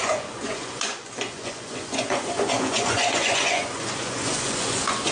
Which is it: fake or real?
fake